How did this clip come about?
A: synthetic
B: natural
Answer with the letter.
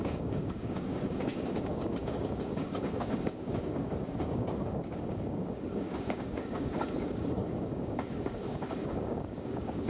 A